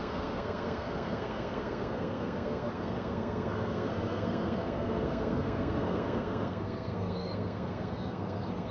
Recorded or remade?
remade